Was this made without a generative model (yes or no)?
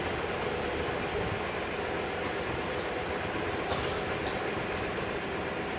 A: yes